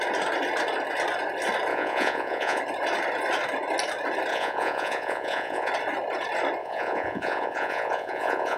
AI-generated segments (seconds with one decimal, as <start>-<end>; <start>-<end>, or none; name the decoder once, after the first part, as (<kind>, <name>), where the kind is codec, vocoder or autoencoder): 1.7-2.6 (vocoder, Vocos); 4.3-5.7; 6.6-8.6

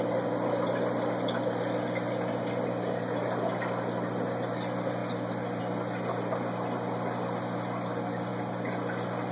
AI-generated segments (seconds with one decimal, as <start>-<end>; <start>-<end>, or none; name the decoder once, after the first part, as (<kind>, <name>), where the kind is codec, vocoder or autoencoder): none

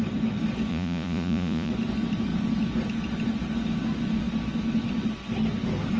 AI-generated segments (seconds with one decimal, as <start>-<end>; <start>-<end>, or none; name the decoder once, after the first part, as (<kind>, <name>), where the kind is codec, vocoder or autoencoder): 0.7-1.7 (vocoder, Vocos)

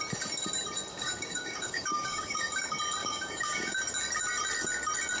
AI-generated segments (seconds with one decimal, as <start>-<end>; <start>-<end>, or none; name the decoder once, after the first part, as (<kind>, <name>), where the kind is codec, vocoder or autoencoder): 0.9-2.5 (codec, DAC); 3.0-3.7

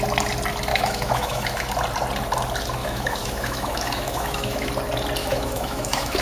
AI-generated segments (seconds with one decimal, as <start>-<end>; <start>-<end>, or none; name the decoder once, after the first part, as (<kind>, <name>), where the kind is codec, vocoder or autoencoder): 0.7-1.7 (autoencoder, DAC-VAE); 2.8-4.7; 5.2-6.2

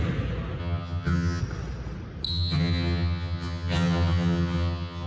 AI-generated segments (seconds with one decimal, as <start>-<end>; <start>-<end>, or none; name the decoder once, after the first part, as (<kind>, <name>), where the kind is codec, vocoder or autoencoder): 0.6-1.4 (vocoder, HiFi-GAN); 2.3-5.1